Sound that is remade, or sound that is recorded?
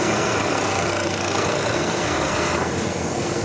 remade